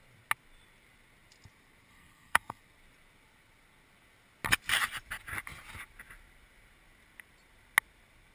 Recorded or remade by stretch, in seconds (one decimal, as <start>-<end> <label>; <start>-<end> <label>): 0.0-1.9 recorded; 1.9-2.6 remade; 2.6-8.3 recorded